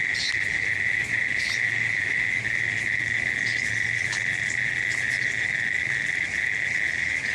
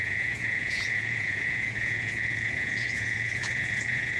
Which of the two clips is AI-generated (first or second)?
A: second